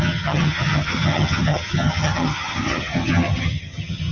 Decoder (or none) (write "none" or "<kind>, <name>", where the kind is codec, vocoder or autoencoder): vocoder, HiFi-GAN